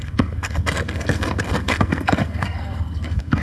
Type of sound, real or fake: fake